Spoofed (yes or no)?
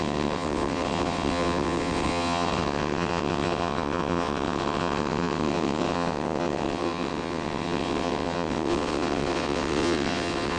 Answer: yes